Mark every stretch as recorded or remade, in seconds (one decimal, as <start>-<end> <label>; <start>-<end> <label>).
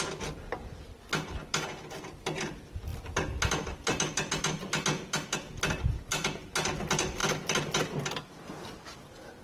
0.0-9.4 recorded